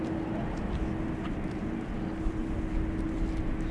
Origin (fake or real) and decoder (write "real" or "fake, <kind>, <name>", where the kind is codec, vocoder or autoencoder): real